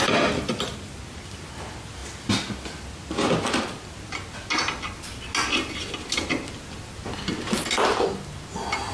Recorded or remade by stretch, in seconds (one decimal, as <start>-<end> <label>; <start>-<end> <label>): 0.0-8.9 recorded